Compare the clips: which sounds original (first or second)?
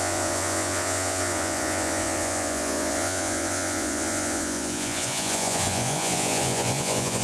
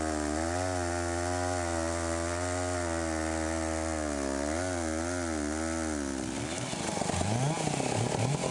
second